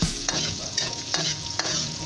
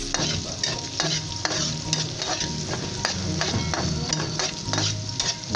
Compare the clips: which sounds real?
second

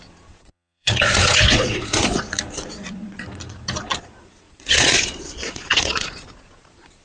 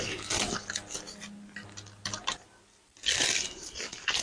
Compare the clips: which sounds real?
second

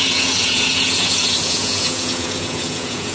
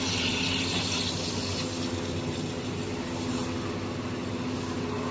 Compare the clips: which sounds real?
second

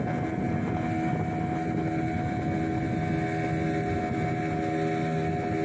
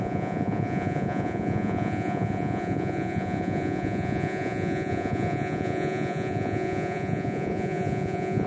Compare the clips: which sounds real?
first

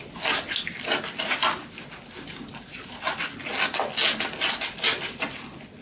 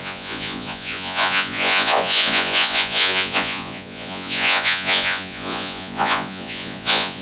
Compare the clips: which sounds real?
first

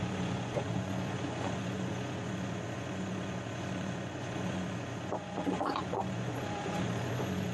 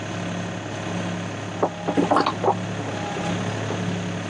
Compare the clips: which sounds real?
second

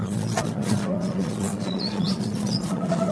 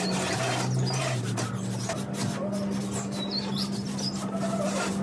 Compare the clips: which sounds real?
second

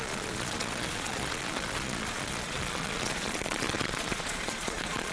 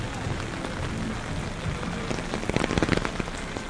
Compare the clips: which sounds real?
second